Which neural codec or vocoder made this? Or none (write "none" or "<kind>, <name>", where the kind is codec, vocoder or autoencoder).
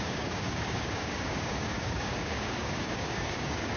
codec, DAC